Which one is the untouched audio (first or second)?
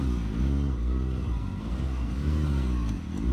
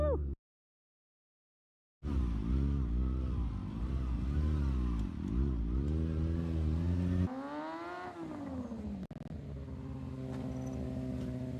second